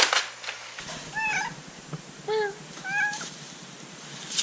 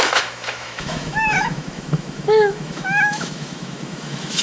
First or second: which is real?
first